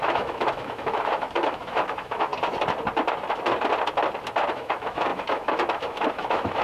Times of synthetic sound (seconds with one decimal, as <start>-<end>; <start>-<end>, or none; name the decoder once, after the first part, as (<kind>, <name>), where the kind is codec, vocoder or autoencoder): 0.0-2.3 (autoencoder, DAC-VAE); 4.5-6.6